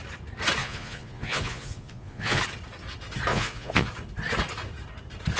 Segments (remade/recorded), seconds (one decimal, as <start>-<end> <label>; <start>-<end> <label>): 0.0-0.6 recorded; 0.6-2.4 remade; 2.4-3.3 recorded; 3.3-3.9 remade; 3.9-5.4 recorded